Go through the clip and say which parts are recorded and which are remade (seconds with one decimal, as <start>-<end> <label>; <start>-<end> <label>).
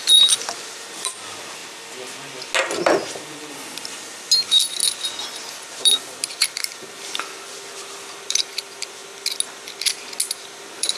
0.0-1.6 remade; 1.6-2.8 recorded; 2.8-4.8 remade; 4.8-5.5 recorded; 5.5-9.0 remade; 9.0-10.6 recorded; 10.6-11.0 remade